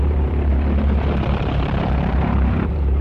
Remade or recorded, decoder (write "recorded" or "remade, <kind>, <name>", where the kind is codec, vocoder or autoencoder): remade, vocoder, BigVGAN v2